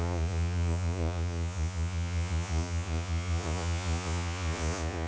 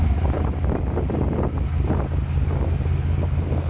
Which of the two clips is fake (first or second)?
first